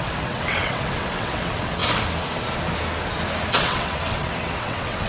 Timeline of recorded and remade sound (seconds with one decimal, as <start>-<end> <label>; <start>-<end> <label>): 0.0-1.8 remade; 1.8-3.5 recorded; 3.5-5.1 remade